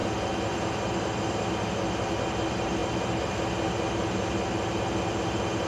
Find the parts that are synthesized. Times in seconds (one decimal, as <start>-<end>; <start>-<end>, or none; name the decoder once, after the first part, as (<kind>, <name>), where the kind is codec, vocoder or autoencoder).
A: none